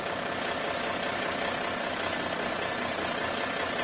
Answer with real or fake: real